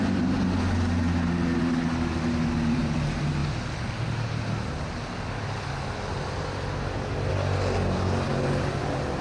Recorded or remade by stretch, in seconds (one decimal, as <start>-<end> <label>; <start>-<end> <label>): 0.0-8.3 recorded; 8.3-9.2 remade